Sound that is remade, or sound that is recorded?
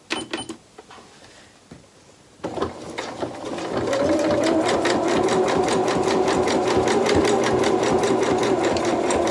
recorded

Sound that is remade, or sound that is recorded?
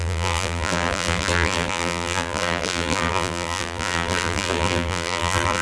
remade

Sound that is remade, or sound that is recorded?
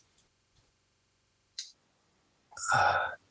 remade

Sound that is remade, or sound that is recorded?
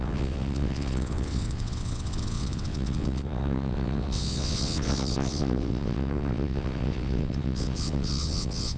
remade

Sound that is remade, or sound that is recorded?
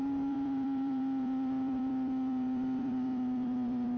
remade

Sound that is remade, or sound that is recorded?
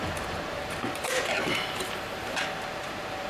remade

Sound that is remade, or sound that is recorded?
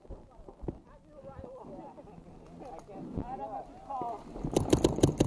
recorded